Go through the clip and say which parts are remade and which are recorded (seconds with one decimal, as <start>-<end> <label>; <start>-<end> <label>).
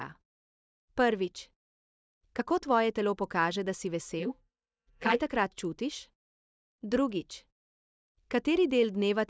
0.0-4.2 recorded; 4.2-5.2 remade; 5.2-9.3 recorded